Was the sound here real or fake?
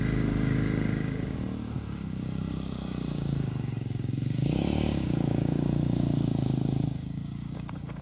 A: fake